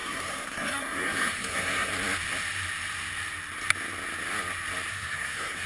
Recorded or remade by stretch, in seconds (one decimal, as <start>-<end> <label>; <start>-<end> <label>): 0.0-1.9 remade; 1.9-4.9 recorded; 4.9-5.7 remade